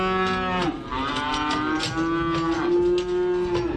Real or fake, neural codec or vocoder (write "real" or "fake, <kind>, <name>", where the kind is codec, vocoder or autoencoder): real